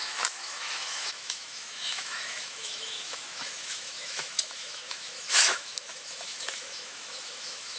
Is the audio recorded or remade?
remade